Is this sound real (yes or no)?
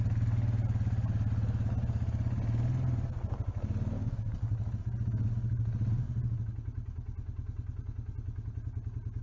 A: yes